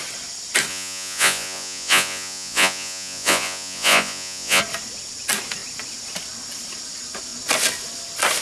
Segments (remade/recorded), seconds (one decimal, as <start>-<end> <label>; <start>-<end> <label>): 0.0-0.7 recorded; 0.7-4.6 remade; 4.6-8.4 recorded